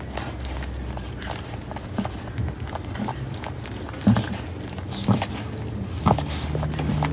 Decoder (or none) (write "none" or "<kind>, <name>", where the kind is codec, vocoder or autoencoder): none